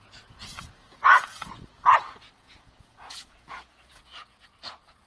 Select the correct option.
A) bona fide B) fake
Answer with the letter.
B